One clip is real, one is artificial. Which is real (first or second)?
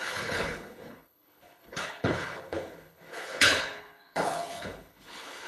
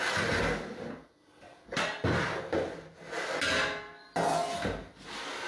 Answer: second